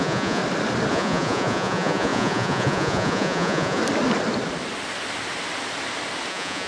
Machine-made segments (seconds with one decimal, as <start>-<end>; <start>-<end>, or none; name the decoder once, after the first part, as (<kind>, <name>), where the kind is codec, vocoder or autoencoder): 0.0-0.4 (vocoder, Vocos); 0.9-3.8; 6.3-6.7